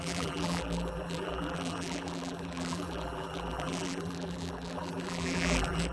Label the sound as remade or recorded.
remade